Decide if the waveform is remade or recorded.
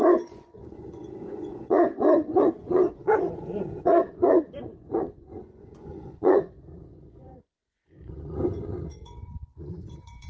remade